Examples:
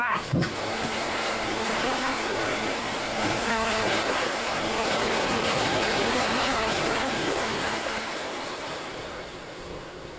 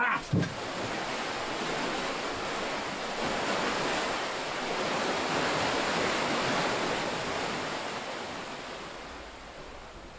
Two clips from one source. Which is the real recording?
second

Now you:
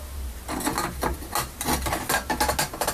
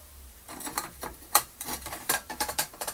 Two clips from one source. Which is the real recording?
first